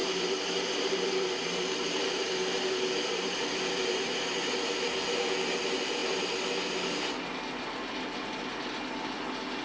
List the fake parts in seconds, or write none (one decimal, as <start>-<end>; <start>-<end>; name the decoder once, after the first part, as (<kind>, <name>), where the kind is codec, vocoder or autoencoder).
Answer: 0.0-4.1 (vocoder, BigVGAN v2)